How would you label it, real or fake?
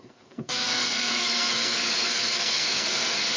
fake